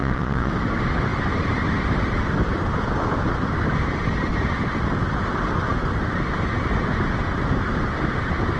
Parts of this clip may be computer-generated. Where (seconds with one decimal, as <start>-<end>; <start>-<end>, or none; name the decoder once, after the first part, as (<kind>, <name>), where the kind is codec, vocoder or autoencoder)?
0.0-0.5 (vocoder, Vocos)